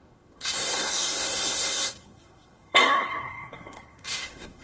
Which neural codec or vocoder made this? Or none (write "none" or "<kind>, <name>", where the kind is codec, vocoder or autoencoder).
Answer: codec, SNAC